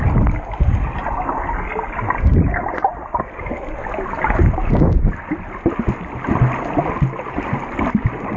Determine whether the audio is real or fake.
real